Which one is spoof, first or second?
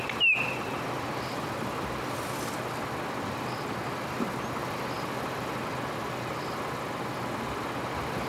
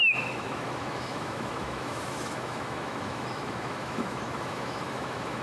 second